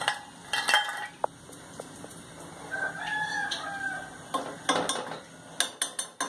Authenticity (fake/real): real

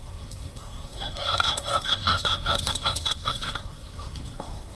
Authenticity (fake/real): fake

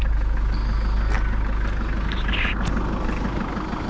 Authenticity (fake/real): real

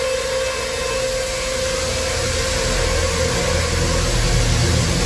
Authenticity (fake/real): real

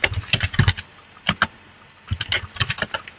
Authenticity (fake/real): real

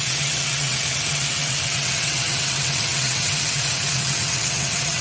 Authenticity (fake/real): fake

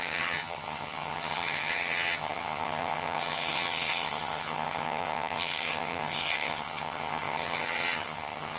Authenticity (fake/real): fake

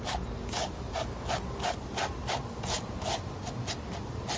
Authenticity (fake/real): real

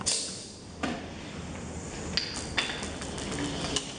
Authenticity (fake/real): real